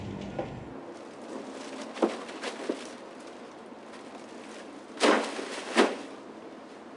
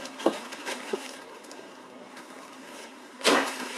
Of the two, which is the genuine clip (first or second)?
first